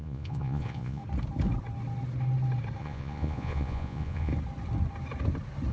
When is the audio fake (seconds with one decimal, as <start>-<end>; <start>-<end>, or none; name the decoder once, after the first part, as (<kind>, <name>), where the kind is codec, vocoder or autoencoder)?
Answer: 0.0-1.0 (vocoder, Vocos); 2.8-4.3